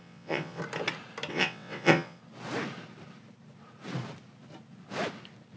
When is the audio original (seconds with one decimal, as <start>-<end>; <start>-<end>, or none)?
0.6-1.3; 2.2-5.6